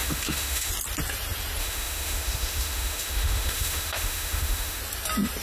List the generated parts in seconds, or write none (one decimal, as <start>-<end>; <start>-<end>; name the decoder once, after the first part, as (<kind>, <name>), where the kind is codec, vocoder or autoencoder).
0.0-0.7 (autoencoder, DAC-VAE); 1.6-4.8